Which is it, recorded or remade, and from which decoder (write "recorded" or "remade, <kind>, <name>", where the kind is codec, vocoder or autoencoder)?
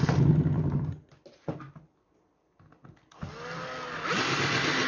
recorded